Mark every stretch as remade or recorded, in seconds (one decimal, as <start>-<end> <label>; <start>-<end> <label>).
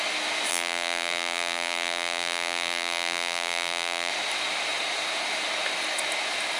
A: 0.0-0.5 recorded; 0.5-4.1 remade; 4.1-6.6 recorded